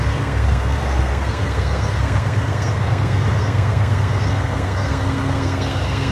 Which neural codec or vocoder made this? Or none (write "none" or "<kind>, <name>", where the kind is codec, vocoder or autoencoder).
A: codec, SNAC